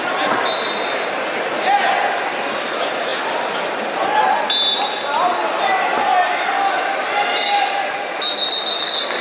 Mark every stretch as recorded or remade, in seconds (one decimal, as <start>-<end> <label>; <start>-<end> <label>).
0.0-9.2 recorded

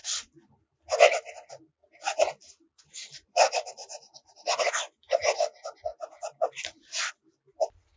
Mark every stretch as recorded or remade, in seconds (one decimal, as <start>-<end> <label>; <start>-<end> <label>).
0.0-0.8 remade; 0.8-3.0 recorded; 3.0-4.7 remade; 4.7-5.9 recorded; 5.9-7.1 remade; 7.1-8.0 recorded

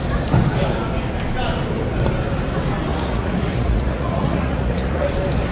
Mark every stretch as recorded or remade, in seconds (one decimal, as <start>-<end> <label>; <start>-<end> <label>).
0.0-2.9 recorded; 2.9-5.1 remade; 5.1-5.5 recorded

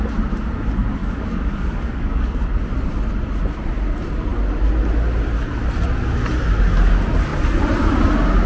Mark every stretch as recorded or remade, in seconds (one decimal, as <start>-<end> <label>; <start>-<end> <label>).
0.0-1.0 recorded; 1.0-2.4 remade; 2.4-8.5 recorded

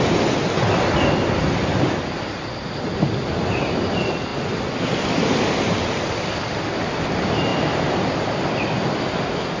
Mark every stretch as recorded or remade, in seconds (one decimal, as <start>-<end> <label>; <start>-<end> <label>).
0.0-9.6 recorded

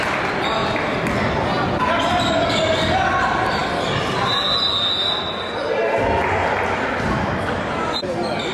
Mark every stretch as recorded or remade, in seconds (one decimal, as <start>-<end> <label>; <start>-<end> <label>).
0.0-8.5 recorded